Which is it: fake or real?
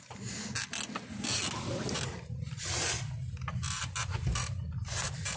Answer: real